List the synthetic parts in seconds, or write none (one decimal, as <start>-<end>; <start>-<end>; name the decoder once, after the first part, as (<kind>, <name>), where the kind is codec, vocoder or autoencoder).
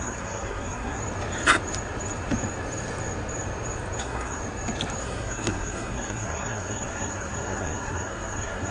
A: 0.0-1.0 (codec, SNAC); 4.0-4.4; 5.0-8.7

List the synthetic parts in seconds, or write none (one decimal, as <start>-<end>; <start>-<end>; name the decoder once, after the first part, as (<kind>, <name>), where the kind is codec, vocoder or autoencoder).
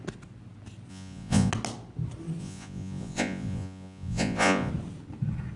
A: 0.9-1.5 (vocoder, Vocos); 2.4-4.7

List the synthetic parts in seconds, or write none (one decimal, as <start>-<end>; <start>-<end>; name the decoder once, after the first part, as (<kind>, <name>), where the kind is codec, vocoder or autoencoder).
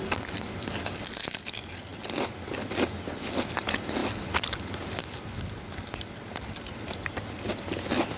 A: 4.0-4.8 (vocoder, BigVGAN v2)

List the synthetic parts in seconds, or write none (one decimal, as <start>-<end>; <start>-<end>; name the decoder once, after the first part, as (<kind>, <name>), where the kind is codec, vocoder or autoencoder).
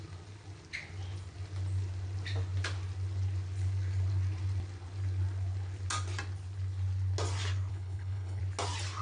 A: 7.7-8.4 (codec, HILCodec)